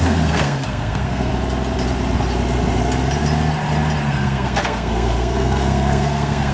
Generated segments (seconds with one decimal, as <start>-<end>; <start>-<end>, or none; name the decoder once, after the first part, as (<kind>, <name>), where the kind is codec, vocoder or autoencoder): 0.0-1.3 (codec, SNAC); 4.0-6.5